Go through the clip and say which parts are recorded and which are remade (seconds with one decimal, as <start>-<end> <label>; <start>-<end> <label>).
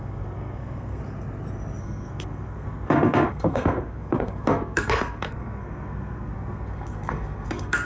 0.0-1.0 remade; 1.0-1.8 recorded; 1.8-7.8 remade